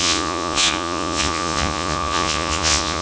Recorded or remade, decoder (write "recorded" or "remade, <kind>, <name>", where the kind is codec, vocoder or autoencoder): remade, vocoder, Vocos